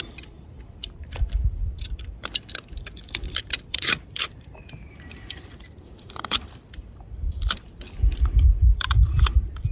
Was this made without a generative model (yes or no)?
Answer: no